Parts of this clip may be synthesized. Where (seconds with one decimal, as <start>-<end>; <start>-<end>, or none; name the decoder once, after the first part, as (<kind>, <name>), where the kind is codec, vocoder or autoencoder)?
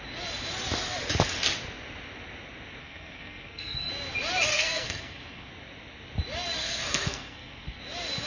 2.8-3.9 (codec, SNAC); 4.5-5.5; 6.6-7.8